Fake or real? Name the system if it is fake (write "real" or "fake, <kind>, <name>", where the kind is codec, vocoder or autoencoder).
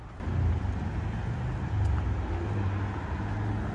real